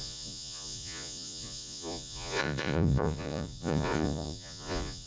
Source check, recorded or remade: remade